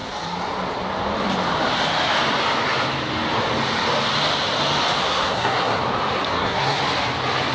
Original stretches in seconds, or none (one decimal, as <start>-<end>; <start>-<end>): 0.0-5.0; 5.8-6.3; 6.8-7.5